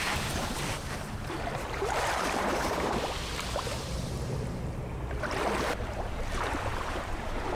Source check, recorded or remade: remade